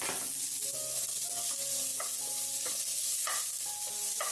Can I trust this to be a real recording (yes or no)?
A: yes